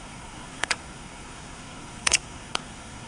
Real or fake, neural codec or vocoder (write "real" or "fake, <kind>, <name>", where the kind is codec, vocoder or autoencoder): fake, codec, SNAC